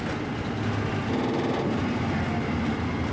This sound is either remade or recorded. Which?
recorded